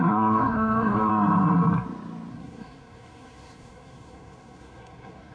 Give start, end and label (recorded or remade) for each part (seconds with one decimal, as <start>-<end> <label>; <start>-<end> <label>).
0.0-1.1 remade; 1.1-2.3 recorded; 2.3-5.3 remade